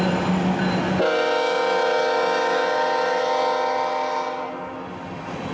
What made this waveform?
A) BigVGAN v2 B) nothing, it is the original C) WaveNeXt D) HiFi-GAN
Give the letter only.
B